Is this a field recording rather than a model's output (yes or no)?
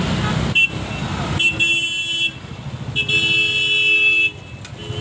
yes